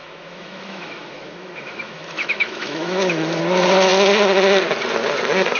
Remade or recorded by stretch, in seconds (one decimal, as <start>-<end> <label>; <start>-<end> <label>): 0.0-3.4 remade; 3.4-5.6 recorded